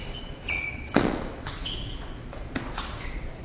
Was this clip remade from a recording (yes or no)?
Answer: yes